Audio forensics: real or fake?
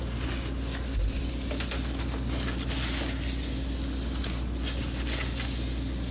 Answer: real